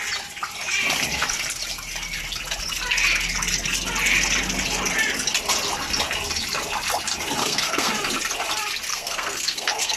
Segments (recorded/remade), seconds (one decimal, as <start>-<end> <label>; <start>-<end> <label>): 0.0-7.4 recorded; 7.4-7.9 remade; 7.9-8.9 recorded; 8.9-10.0 remade